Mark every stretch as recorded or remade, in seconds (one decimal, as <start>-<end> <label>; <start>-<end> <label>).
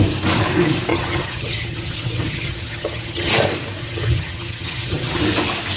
0.0-0.9 recorded; 0.9-3.3 remade; 3.3-3.8 recorded; 3.8-5.2 remade; 5.2-5.8 recorded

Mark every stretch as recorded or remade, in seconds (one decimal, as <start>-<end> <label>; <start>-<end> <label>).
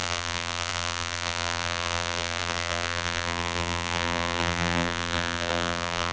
0.0-6.1 remade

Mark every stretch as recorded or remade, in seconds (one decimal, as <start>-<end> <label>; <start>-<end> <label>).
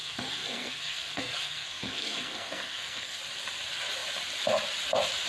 0.0-3.2 remade; 3.2-5.3 recorded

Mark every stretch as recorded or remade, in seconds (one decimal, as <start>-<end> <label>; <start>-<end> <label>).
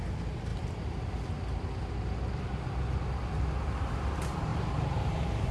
0.0-4.5 recorded; 4.5-5.5 remade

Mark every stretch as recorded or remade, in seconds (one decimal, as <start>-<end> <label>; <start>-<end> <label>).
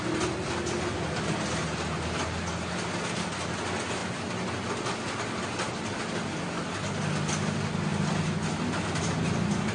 0.0-9.7 recorded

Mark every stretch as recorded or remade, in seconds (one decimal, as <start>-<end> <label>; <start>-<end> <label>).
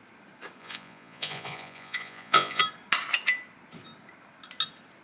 0.0-0.6 recorded; 0.6-2.6 remade; 2.6-5.0 recorded